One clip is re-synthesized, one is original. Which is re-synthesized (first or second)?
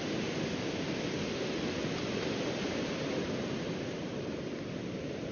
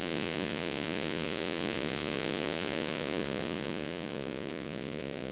second